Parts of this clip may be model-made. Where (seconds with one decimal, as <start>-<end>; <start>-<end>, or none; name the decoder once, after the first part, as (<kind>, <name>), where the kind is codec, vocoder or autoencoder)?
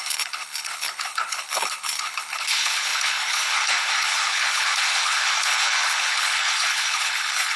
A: 0.0-7.6 (codec, HILCodec)